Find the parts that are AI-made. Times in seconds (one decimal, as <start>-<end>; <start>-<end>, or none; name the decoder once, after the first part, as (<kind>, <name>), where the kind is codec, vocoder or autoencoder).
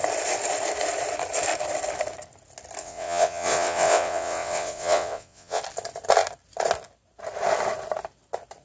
2.8-5.6 (vocoder, WaveNeXt)